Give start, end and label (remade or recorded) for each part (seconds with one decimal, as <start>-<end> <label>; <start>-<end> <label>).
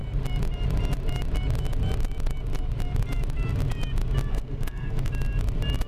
0.0-4.3 recorded; 4.3-5.1 remade; 5.1-5.9 recorded